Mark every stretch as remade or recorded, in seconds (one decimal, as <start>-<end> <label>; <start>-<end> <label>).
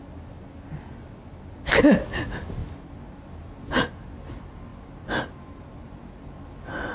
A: 0.0-6.9 recorded